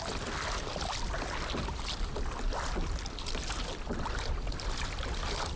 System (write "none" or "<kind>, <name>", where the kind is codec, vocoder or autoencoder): none